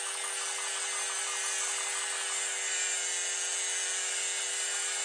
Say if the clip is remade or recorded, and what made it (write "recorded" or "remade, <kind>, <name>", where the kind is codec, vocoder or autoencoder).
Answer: recorded